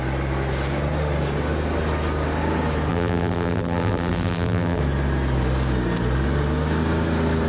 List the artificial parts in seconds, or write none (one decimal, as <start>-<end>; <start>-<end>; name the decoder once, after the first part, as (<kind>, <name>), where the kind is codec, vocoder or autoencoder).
2.9-4.8 (vocoder, BigVGAN v2)